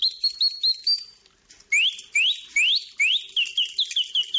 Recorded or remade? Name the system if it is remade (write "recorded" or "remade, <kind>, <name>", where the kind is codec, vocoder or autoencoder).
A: recorded